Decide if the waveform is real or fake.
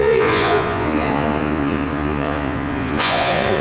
fake